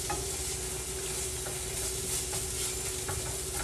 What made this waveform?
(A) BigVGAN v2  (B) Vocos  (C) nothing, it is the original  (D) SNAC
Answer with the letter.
C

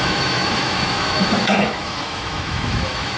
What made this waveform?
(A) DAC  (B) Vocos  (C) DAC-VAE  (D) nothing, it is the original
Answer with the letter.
C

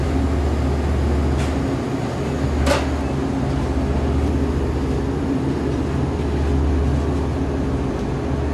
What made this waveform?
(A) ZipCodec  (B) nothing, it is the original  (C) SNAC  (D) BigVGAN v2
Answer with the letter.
B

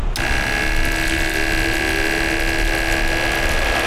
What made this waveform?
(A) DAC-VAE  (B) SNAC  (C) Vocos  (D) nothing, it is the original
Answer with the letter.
D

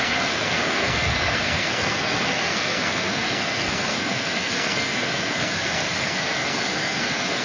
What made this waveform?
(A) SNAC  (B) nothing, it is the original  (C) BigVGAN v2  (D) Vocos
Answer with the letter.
A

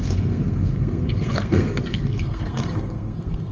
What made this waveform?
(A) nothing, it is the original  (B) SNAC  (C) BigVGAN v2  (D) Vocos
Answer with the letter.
B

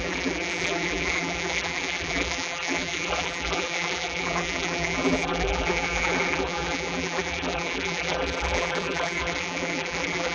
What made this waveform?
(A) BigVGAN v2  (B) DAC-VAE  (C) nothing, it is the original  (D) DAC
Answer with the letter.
A